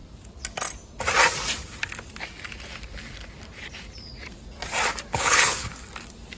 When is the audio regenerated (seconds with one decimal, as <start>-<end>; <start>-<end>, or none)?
5.1-5.7